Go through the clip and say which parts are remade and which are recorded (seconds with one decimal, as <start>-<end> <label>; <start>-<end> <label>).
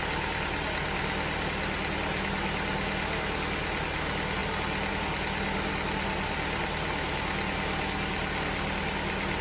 0.0-9.4 recorded